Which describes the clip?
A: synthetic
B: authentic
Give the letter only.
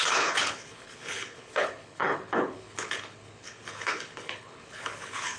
A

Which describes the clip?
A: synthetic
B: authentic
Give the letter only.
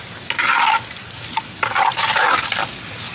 B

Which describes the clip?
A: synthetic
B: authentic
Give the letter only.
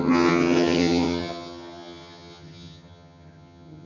A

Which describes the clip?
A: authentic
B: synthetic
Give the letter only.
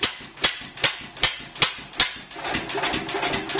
A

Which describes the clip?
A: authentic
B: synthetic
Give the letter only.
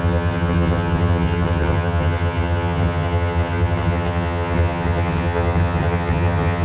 B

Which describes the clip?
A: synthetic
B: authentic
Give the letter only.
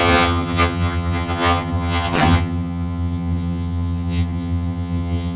A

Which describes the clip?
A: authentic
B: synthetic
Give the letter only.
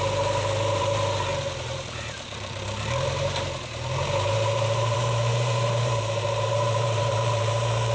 B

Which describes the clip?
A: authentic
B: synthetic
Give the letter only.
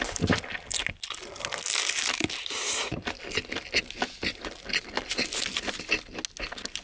A